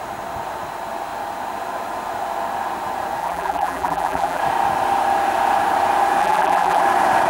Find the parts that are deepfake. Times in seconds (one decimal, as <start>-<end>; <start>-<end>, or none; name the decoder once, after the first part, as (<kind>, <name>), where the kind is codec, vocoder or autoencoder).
3.2-4.4 (vocoder, BigVGAN v2); 6.2-6.8